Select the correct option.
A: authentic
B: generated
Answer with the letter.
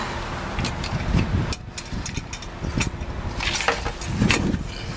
A